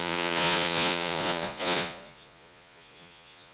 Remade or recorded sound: remade